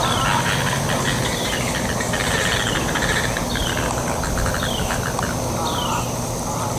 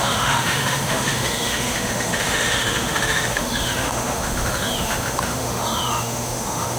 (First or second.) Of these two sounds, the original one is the first